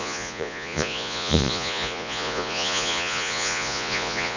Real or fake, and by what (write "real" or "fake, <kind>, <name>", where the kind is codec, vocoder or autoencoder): fake, vocoder, Vocos